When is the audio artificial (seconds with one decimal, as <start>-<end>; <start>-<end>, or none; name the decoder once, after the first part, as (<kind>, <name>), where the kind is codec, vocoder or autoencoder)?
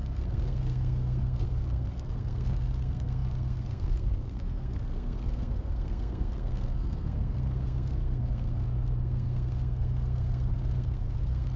0.0-11.6 (codec, SNAC)